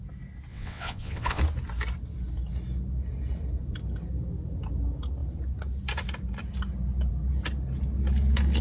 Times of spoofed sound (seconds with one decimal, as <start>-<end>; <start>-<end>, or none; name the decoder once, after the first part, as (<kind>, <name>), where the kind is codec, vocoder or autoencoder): 0.5-1.4 (vocoder, WaveNeXt)